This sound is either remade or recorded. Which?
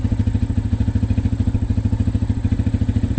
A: recorded